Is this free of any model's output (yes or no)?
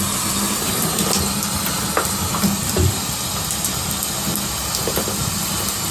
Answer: yes